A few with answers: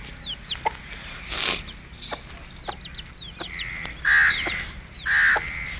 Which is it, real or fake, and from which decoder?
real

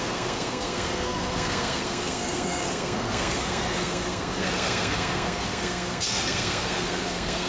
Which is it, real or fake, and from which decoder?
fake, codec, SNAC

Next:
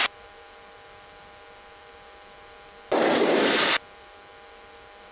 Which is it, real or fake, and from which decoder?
real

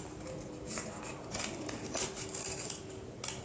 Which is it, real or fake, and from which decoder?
real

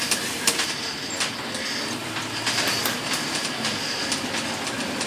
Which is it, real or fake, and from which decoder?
fake, vocoder, BigVGAN v2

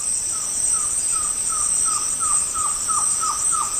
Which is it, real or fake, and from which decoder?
fake, vocoder, BigVGAN v2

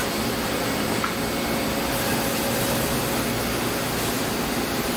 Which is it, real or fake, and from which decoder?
real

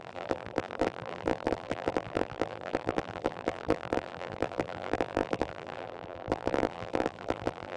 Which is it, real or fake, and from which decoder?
fake, vocoder, BigVGAN v2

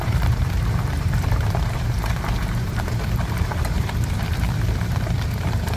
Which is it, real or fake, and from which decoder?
fake, vocoder, BigVGAN v2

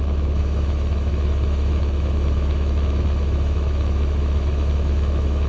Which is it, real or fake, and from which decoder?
fake, autoencoder, DAC-VAE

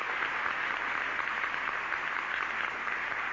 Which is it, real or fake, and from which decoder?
real